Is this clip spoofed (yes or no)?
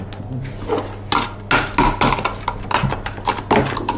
no